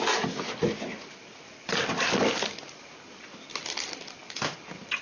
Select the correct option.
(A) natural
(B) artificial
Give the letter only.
A